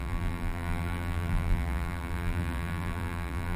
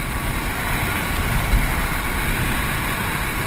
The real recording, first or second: second